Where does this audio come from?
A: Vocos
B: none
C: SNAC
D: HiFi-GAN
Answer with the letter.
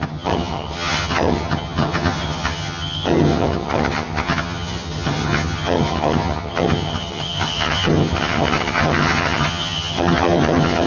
D